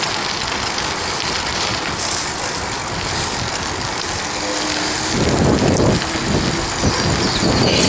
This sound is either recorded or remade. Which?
recorded